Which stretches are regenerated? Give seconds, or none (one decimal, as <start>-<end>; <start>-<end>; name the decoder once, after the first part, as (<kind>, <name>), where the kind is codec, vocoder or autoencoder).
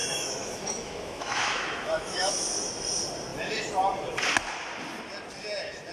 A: 0.0-2.3 (autoencoder, DAC-VAE)